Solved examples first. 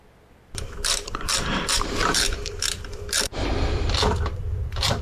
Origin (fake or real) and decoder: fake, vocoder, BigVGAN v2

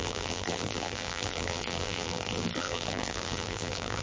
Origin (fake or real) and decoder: fake, vocoder, BigVGAN v2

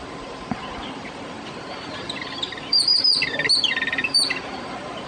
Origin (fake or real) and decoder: fake, vocoder, BigVGAN v2